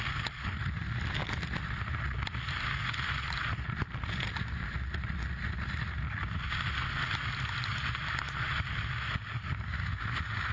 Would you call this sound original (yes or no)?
yes